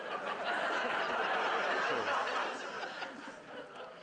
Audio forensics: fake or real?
real